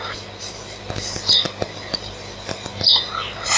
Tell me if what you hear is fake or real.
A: real